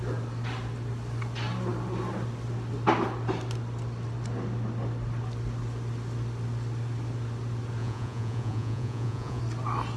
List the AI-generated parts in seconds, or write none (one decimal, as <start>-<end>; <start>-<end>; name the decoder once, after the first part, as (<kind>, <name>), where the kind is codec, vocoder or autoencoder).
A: 7.8-9.4 (vocoder, Vocos)